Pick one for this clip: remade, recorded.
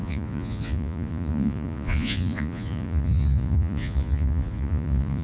remade